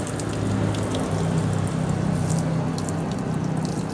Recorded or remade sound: recorded